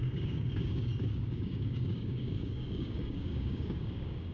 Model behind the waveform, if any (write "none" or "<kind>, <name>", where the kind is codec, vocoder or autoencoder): codec, DAC